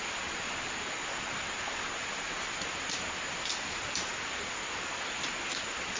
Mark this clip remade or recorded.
recorded